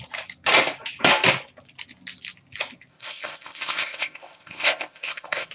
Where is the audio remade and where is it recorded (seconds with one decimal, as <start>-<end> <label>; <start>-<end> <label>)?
0.0-2.9 recorded; 2.9-5.5 remade